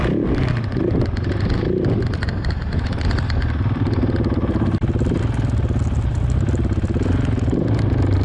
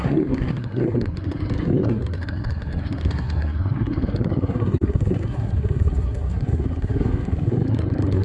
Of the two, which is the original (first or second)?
first